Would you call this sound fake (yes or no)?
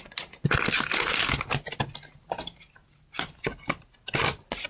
no